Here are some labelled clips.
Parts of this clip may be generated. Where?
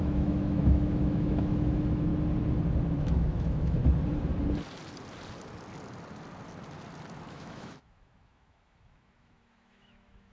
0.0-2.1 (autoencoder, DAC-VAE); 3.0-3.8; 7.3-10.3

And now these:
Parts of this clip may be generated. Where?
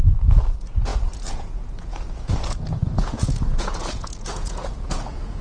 0.0-5.4 (vocoder, Vocos)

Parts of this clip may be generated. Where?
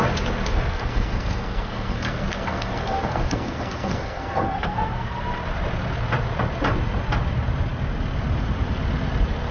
0.5-5.2 (codec, SNAC)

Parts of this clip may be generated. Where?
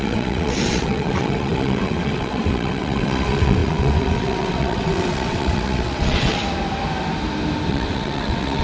0.0-6.4 (vocoder, WaveNeXt); 7.7-8.6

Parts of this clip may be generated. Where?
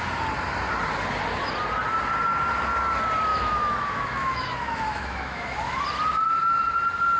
3.3-5.8 (autoencoder, DAC-VAE)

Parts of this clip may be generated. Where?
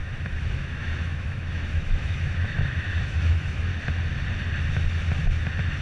0.0-3.7 (autoencoder, DAC-VAE)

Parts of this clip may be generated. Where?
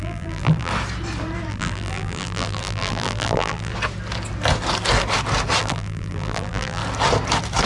0.0-0.7 (vocoder, BigVGAN v2); 1.5-3.7; 5.6-6.8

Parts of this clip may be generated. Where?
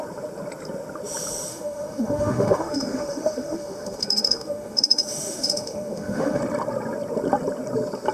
1.5-6.4 (autoencoder, DAC-VAE)